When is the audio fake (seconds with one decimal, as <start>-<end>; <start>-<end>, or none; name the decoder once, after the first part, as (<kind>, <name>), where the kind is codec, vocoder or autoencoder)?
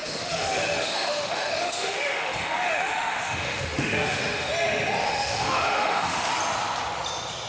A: 0.0-4.5 (autoencoder, DAC-VAE); 5.0-6.3